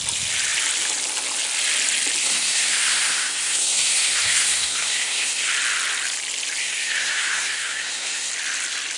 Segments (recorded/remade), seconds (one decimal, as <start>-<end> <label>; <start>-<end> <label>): 0.0-2.2 recorded; 2.2-5.5 remade; 5.5-6.6 recorded; 6.6-8.3 remade; 8.3-9.0 recorded